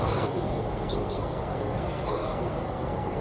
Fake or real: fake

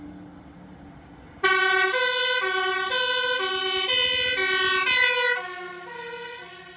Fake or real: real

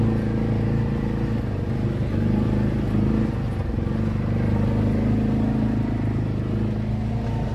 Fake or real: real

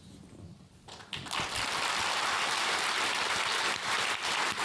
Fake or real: real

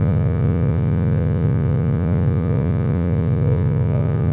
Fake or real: fake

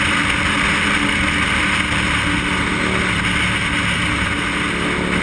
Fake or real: real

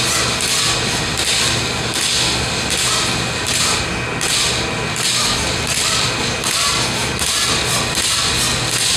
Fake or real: real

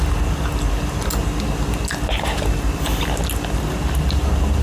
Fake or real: real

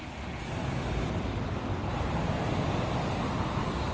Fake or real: real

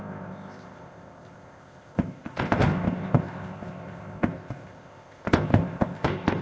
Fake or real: fake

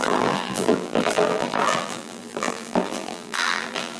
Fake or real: fake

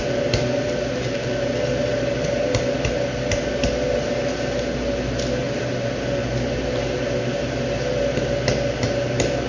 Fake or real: real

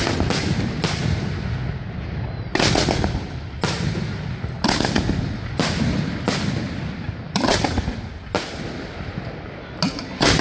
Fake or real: real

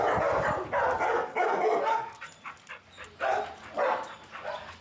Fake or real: real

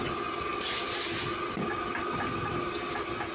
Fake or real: real